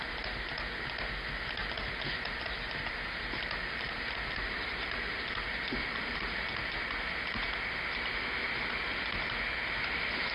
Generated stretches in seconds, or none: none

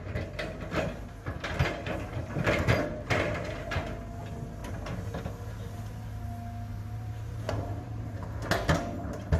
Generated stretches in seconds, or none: 2.1-3.7 (vocoder, BigVGAN v2); 6.7-8.2

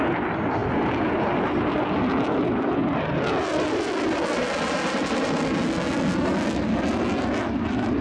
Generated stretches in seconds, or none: none

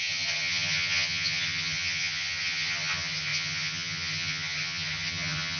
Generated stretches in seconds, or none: 0.0-5.6 (vocoder, HiFi-GAN)

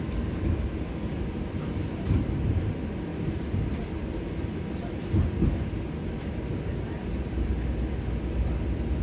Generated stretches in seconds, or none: none

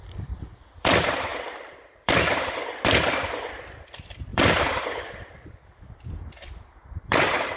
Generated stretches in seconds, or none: 0.0-1.3 (vocoder, BigVGAN v2); 1.9-7.6

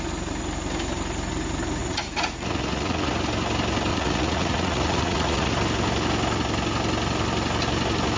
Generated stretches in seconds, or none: 1.8-3.1 (vocoder, Vocos); 3.9-5.5